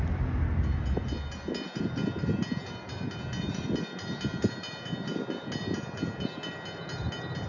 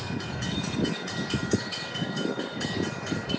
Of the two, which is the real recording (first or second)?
first